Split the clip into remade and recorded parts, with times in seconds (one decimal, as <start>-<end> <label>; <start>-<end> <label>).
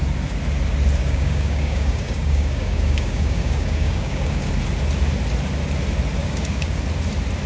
0.0-1.0 recorded; 1.0-4.5 remade; 4.5-6.2 recorded; 6.2-6.8 remade; 6.8-7.5 recorded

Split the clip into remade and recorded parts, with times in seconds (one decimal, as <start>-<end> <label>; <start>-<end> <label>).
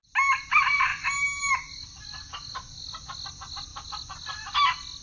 0.0-5.0 recorded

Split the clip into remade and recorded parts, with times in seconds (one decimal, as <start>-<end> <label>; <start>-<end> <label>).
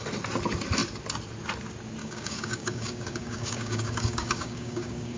0.0-2.0 recorded; 2.0-5.2 remade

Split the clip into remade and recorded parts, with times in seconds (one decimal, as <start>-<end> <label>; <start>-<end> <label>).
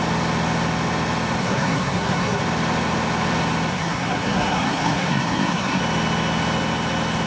0.0-1.4 recorded; 1.4-2.4 remade; 2.4-3.7 recorded; 3.7-5.8 remade; 5.8-7.3 recorded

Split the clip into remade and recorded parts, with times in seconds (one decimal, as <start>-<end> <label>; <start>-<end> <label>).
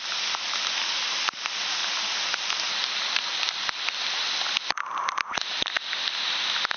0.0-6.8 remade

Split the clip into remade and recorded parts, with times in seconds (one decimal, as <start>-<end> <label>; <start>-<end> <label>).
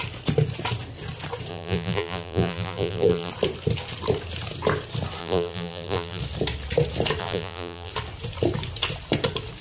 0.0-1.5 recorded; 1.5-3.3 remade; 3.3-5.2 recorded; 5.2-6.2 remade; 6.2-7.2 recorded; 7.2-7.9 remade; 7.9-9.6 recorded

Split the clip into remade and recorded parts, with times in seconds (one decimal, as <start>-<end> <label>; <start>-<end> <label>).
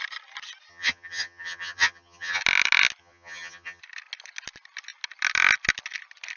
0.0-0.7 recorded; 0.7-2.4 remade; 2.4-3.0 recorded; 3.0-3.8 remade; 3.8-6.4 recorded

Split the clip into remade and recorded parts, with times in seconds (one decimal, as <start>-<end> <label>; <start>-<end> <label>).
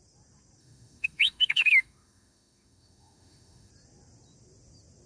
0.0-0.6 recorded; 0.6-3.7 remade; 3.7-5.1 recorded